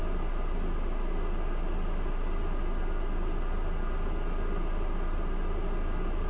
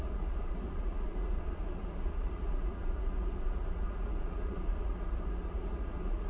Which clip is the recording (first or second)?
first